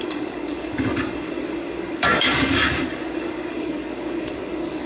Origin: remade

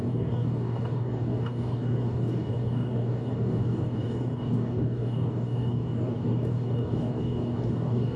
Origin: remade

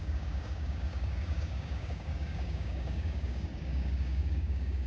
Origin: remade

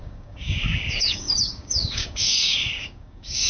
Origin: remade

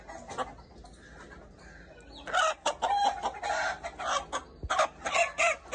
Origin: recorded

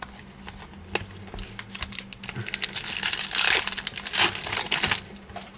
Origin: recorded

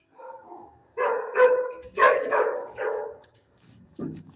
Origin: remade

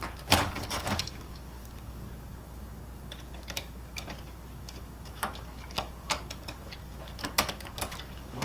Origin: remade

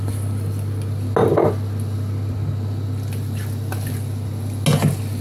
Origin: recorded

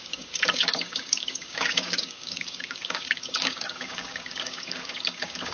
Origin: remade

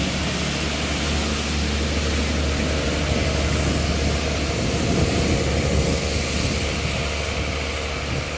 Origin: recorded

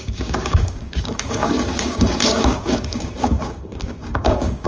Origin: remade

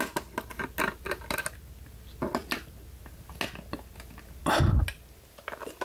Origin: recorded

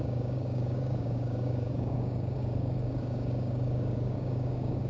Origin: remade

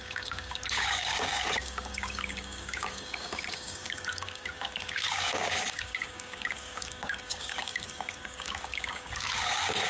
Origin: remade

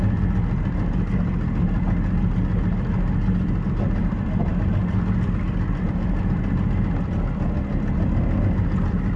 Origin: recorded